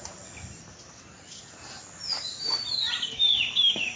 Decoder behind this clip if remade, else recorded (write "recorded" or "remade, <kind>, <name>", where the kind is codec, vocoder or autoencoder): recorded